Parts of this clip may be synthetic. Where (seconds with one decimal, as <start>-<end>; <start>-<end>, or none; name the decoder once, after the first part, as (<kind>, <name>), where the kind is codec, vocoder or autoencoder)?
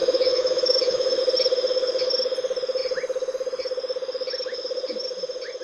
0.0-1.2 (autoencoder, DAC-VAE)